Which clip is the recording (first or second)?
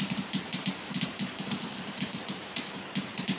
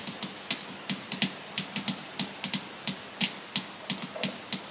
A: second